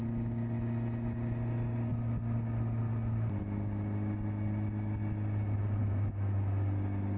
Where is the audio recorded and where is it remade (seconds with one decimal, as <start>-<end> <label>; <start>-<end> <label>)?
0.0-7.2 recorded